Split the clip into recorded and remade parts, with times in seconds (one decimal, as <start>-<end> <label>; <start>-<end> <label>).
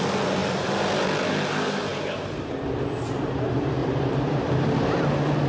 0.0-1.9 recorded; 1.9-2.6 remade; 2.6-3.8 recorded; 3.8-4.4 remade; 4.4-5.5 recorded